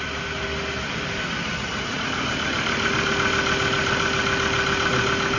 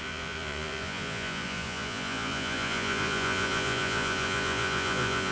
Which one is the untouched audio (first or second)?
first